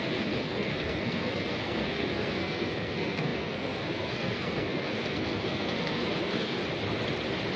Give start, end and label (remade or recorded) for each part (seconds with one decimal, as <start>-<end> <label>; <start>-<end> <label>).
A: 0.0-6.6 remade; 6.6-7.6 recorded